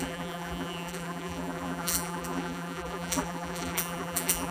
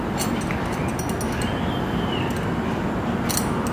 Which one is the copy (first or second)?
first